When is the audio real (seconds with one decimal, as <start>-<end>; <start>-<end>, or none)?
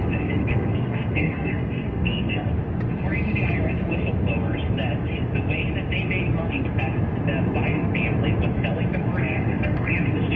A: 0.0-0.4; 2.5-9.2; 9.9-10.4